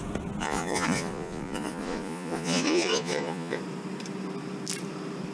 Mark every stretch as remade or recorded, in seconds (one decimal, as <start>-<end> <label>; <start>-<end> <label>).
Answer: 0.0-0.4 recorded; 0.4-3.6 remade; 3.6-5.3 recorded